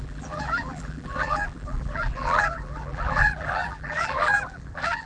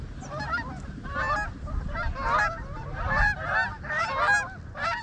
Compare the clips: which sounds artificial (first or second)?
first